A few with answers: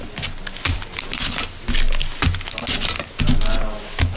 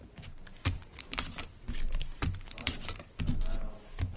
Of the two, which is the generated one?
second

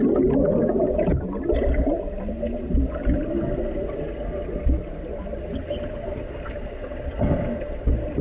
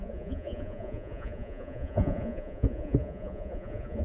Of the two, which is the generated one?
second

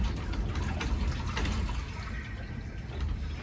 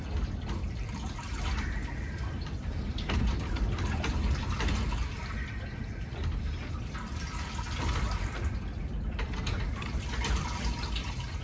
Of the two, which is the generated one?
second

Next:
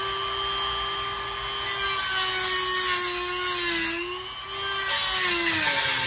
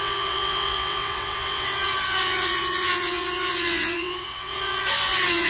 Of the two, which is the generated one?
second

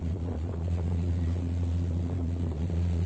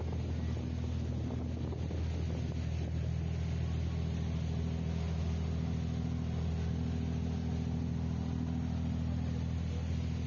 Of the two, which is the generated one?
first